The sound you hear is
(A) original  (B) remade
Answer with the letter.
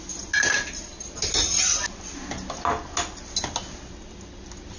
A